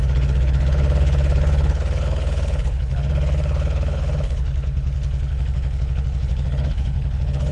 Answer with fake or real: fake